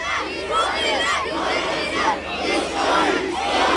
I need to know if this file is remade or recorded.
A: recorded